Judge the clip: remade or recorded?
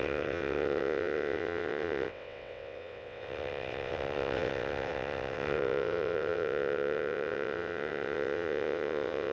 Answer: remade